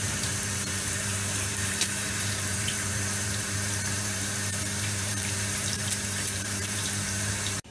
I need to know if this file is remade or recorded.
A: remade